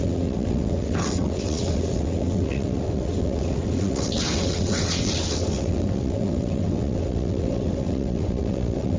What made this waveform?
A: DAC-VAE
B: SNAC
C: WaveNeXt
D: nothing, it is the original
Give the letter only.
C